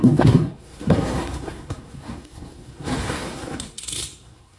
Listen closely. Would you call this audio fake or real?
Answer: fake